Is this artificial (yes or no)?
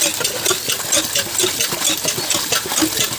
no